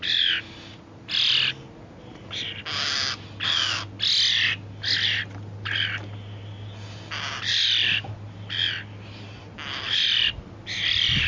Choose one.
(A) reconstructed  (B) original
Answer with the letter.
B